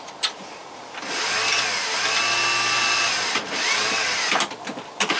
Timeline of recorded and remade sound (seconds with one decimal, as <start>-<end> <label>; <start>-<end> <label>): 0.0-5.2 recorded